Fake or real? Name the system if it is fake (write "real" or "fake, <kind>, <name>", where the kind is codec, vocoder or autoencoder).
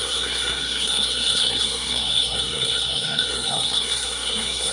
fake, codec, SNAC